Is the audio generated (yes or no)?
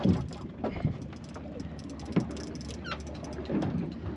no